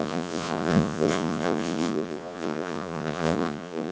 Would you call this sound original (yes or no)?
no